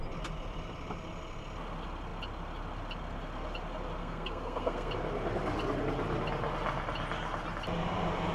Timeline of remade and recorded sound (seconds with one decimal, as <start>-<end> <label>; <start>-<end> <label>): 0.0-4.0 recorded; 4.0-4.9 remade; 4.9-8.3 recorded